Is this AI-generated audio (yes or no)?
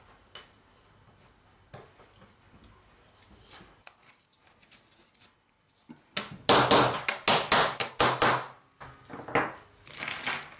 no